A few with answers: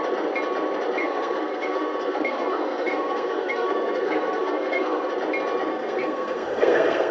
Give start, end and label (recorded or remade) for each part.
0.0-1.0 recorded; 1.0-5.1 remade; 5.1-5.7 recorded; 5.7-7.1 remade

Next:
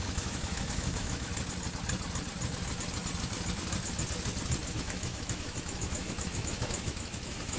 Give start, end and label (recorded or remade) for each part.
0.0-1.3 remade; 1.3-4.7 recorded; 4.7-7.6 remade

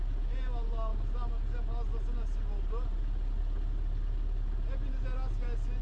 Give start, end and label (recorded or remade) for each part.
0.0-5.8 recorded